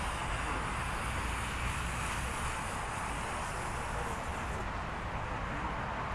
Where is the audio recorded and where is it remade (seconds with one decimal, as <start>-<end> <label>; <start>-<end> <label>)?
0.0-6.1 recorded